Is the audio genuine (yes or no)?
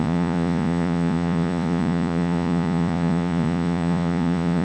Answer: no